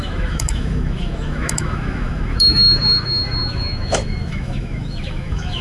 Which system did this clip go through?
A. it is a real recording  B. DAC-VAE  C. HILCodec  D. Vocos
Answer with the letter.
B